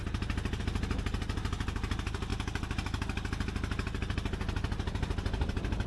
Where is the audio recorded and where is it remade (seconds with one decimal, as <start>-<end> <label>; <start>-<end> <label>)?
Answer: 0.0-5.9 recorded